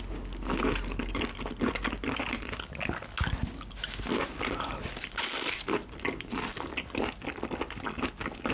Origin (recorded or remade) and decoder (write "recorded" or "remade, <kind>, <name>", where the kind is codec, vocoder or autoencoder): recorded